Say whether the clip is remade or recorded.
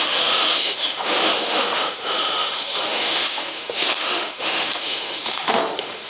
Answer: remade